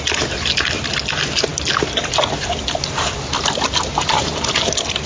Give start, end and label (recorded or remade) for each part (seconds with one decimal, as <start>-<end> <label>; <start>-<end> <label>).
0.0-5.1 recorded